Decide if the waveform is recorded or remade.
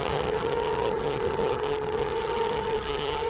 remade